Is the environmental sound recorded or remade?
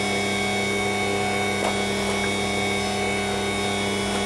recorded